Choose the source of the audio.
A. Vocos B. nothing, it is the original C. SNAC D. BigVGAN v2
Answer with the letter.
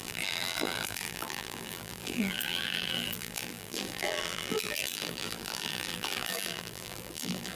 D